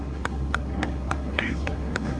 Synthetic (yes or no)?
yes